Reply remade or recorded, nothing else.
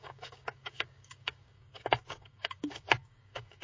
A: remade